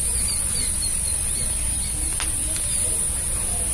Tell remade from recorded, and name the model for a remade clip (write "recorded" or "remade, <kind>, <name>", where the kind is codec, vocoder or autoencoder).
recorded